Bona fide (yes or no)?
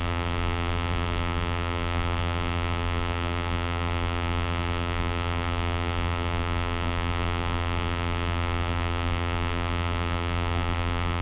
no